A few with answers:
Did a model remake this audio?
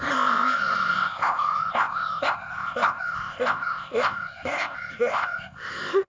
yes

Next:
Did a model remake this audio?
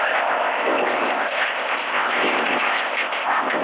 yes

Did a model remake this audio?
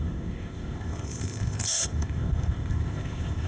yes